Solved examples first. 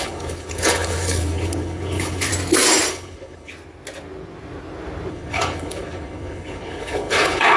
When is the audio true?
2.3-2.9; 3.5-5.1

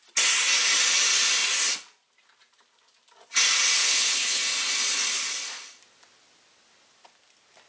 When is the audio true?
0.0-3.8; 4.4-7.7

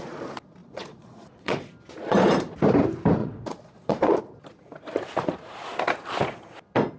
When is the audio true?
0.0-0.6; 1.7-3.2; 4.2-7.0

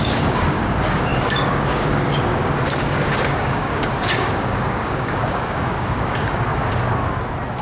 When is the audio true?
6.5-7.6

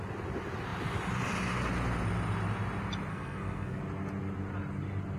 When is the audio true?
0.0-3.1; 3.8-5.2

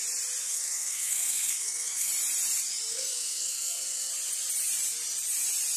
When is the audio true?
0.0-0.4; 2.1-2.9; 4.1-5.8

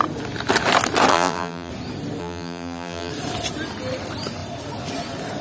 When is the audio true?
0.0-1.1; 1.7-2.2; 3.1-5.4

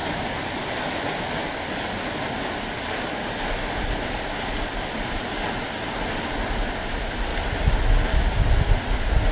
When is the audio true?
0.8-7.3; 7.8-9.3